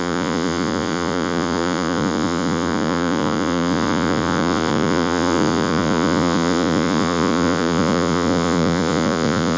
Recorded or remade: remade